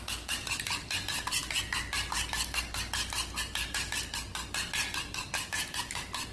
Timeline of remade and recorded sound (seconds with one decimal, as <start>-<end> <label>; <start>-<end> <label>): 0.0-6.3 recorded